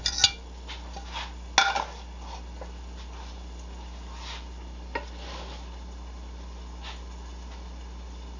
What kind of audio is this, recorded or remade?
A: recorded